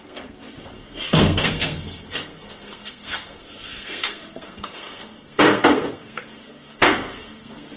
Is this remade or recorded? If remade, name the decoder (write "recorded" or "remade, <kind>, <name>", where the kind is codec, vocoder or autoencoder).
remade, codec, SNAC